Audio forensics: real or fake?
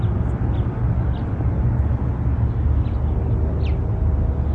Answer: real